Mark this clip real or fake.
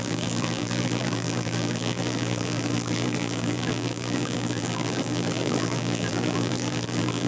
fake